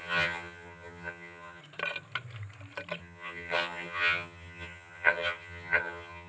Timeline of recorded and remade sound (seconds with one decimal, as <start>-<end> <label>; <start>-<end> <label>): 0.0-1.6 remade; 1.6-3.0 recorded; 3.0-6.3 remade

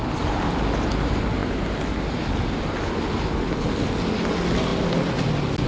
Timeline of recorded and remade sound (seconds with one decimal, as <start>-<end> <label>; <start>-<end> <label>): 0.0-5.7 recorded

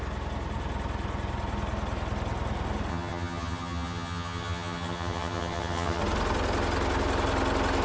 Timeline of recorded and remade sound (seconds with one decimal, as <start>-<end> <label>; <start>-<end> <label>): 0.0-2.9 recorded; 2.9-6.0 remade; 6.0-7.8 recorded